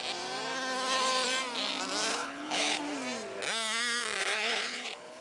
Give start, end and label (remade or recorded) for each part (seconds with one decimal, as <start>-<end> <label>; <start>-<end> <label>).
0.0-2.1 recorded; 2.1-2.8 remade; 2.8-4.2 recorded; 4.2-5.2 remade